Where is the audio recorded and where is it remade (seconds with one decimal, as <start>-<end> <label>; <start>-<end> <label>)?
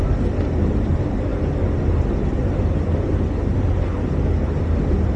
0.0-5.2 recorded